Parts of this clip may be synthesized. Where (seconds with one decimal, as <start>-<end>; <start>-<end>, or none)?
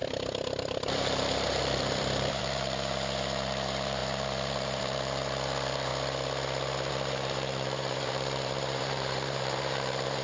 0.0-5.9; 6.9-10.2